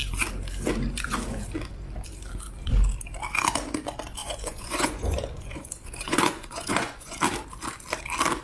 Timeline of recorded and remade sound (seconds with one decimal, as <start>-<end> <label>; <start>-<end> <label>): 0.0-4.2 recorded; 4.2-7.2 remade; 7.2-8.4 recorded